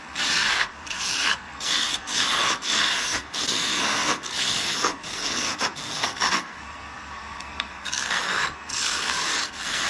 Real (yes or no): no